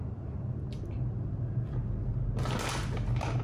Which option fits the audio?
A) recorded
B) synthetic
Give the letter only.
A